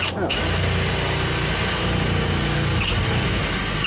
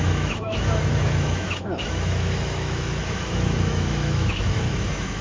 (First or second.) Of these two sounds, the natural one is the first